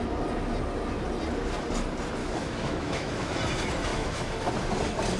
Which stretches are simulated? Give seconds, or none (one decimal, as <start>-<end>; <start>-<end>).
2.2-3.4; 3.9-4.5